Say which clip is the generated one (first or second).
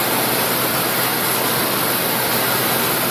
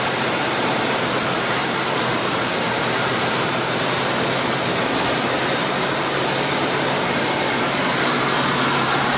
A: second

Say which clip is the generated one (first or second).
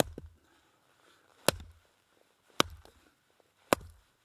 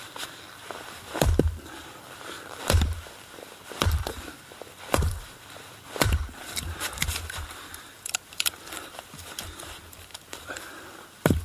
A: second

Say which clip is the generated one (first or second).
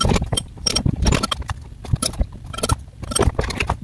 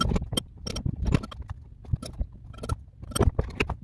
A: first